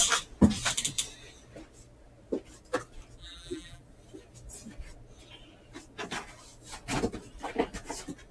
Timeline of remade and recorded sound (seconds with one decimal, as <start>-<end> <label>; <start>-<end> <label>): 0.0-3.2 recorded; 3.2-3.8 remade; 3.8-8.3 recorded